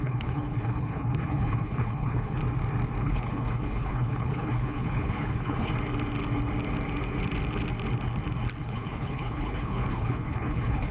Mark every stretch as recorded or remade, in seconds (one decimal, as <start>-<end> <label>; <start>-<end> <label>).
0.0-2.4 remade; 2.4-3.0 recorded; 3.0-5.7 remade; 5.7-8.6 recorded; 8.6-10.9 remade